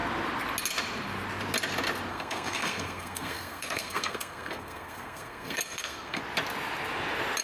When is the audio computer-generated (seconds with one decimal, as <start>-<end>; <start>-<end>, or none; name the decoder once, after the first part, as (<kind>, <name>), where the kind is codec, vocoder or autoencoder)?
2.1-6.2 (codec, SNAC)